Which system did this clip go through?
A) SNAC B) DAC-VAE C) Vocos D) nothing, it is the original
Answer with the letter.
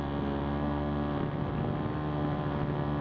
D